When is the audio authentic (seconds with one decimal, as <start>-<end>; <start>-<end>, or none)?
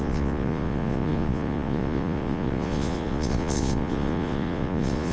none